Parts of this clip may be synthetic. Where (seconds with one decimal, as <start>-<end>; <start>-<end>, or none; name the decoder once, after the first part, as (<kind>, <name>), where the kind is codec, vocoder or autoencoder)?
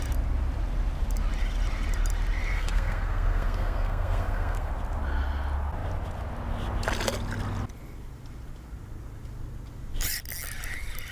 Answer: 2.5-4.7 (codec, SNAC)